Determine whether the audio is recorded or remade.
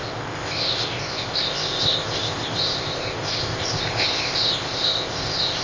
remade